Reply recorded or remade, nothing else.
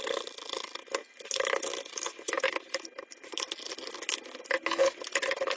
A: recorded